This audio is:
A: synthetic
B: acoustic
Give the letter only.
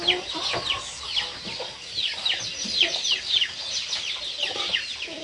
B